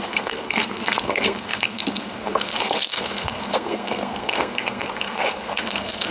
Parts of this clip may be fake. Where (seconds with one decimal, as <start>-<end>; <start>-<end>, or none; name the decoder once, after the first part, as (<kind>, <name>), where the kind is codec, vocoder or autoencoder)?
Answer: 0.0-6.1 (codec, SNAC)